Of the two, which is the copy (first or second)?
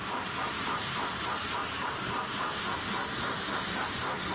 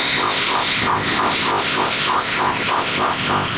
second